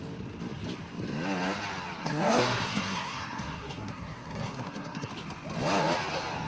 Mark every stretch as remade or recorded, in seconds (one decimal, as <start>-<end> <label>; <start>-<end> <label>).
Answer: 0.0-2.0 recorded; 2.0-5.1 remade; 5.1-6.5 recorded